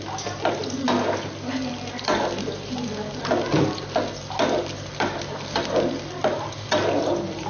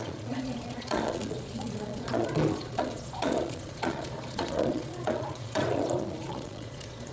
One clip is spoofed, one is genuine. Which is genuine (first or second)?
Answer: first